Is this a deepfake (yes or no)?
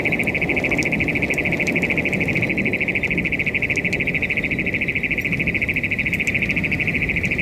no